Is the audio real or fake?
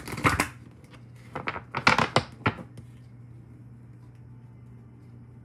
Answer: real